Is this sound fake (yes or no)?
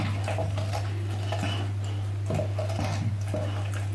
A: no